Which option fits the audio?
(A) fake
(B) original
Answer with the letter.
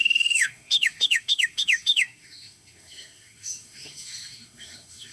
A